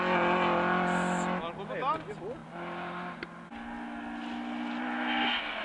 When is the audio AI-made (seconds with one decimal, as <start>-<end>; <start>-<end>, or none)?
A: none